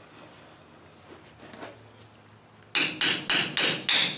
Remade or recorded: recorded